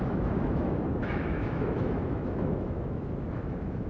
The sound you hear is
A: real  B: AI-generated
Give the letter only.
B